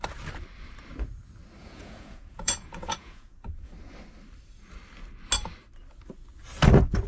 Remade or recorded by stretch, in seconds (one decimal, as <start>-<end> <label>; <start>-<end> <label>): 0.0-1.6 recorded; 1.6-3.7 remade; 3.7-7.1 recorded